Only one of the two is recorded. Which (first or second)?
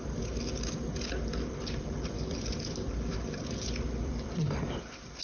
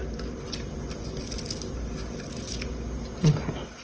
second